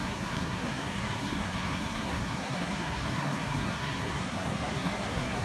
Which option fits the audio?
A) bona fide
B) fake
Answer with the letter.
B